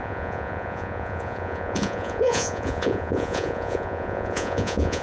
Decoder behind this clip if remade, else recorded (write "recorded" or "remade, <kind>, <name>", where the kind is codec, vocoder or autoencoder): remade, vocoder, Vocos